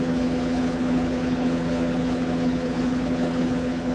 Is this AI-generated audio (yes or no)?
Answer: yes